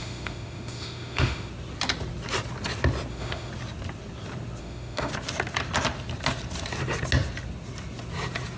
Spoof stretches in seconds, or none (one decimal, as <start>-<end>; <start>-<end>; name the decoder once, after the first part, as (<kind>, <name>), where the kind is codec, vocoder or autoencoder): 0.0-1.5 (autoencoder, DAC-VAE); 3.1-3.5; 4.6-5.1